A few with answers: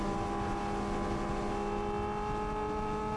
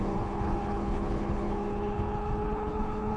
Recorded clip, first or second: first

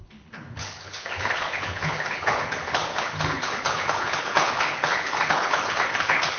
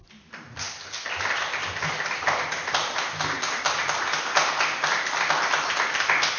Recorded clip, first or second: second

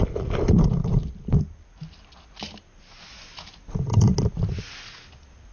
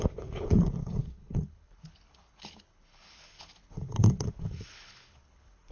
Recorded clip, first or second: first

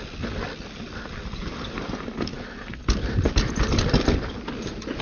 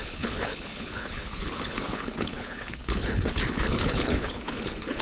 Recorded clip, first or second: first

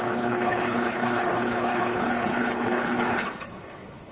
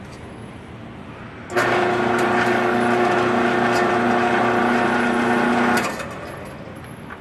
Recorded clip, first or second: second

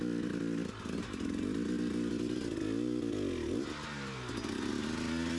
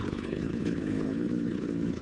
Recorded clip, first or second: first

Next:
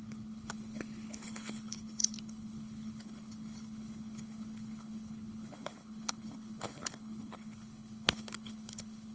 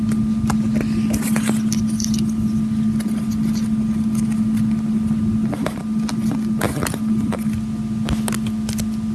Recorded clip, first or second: second